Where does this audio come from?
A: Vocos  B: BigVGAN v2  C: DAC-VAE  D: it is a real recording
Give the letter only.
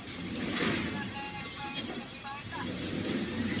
B